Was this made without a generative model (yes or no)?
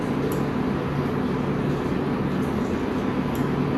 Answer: yes